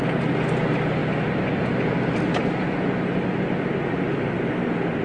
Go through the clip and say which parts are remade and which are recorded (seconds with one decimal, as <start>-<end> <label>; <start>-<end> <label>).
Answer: 0.0-5.0 recorded